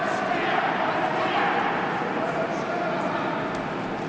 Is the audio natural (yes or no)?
yes